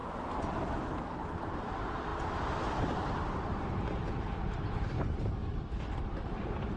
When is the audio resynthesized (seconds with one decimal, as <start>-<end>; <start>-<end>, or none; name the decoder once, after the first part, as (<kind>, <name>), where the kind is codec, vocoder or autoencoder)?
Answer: 1.3-5.4 (vocoder, BigVGAN v2); 6.0-6.8